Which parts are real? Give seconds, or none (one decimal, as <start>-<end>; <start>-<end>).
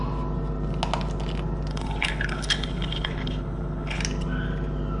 0.0-1.7; 4.0-5.0